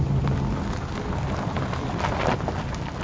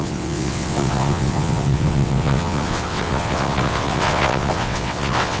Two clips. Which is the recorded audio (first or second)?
first